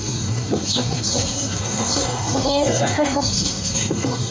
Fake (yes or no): yes